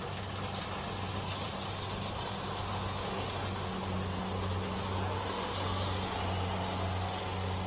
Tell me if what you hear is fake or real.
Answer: real